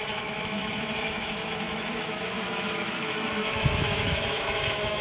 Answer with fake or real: fake